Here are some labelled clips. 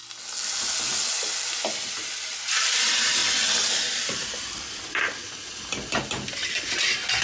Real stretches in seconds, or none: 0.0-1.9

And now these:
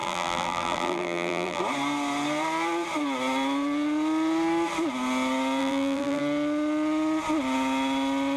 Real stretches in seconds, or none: 1.6-5.6; 6.2-8.4